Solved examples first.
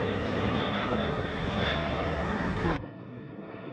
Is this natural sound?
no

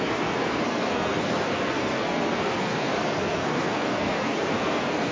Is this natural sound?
no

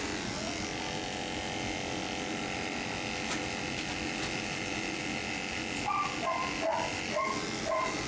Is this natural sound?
yes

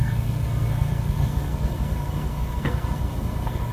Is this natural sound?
no